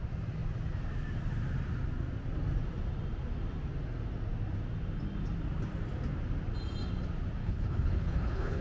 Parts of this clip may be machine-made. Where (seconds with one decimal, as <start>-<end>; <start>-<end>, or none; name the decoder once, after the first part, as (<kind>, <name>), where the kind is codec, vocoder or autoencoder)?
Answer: 7.4-8.6 (codec, HILCodec)